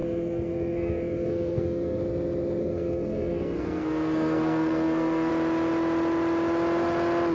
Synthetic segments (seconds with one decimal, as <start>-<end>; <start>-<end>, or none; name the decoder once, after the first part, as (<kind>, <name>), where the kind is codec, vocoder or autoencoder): 0.0-2.0 (codec, SNAC); 2.6-5.3